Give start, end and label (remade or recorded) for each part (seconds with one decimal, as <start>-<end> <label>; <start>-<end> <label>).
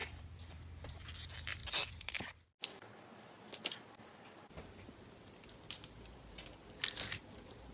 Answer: 0.0-7.7 recorded